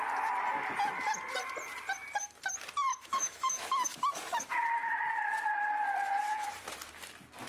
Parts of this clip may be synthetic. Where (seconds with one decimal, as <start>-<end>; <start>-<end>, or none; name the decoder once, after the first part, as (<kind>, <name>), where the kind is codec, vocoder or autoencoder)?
2.9-4.5 (autoencoder, DAC-VAE)